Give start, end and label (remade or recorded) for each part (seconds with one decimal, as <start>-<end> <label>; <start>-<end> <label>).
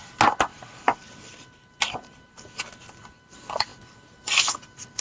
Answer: 0.0-5.0 recorded